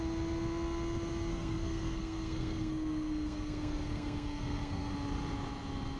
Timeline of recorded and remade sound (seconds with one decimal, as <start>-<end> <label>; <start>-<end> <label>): 0.0-1.3 recorded; 1.3-4.9 remade; 4.9-6.0 recorded